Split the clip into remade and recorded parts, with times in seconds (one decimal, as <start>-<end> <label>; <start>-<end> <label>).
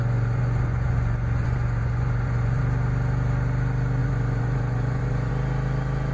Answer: 0.0-2.6 remade; 2.6-4.0 recorded; 4.0-5.3 remade; 5.3-6.1 recorded